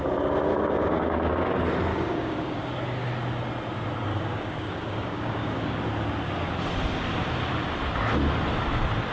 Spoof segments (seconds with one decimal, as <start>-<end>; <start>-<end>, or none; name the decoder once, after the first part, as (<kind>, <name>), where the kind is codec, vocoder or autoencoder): 0.5-1.3 (codec, DAC); 1.9-2.6; 4.1-5.8